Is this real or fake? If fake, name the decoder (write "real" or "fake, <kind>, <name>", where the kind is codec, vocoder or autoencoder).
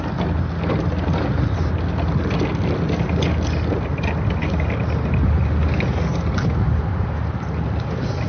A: real